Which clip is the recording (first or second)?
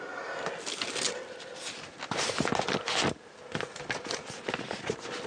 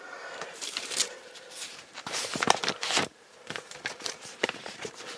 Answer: first